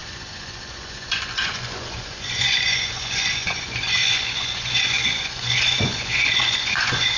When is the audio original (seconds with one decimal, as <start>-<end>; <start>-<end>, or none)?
none